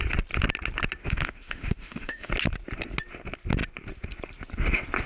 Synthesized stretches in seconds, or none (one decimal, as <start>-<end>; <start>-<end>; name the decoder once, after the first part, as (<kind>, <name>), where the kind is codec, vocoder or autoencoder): 1.0-2.3 (autoencoder, DAC-VAE)